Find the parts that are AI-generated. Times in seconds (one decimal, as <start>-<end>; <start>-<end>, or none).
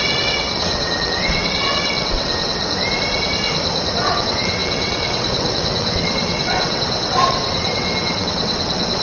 0.0-2.6; 4.0-9.0